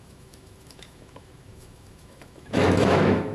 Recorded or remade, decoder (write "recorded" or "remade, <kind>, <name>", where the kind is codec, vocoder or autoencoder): remade, autoencoder, DAC-VAE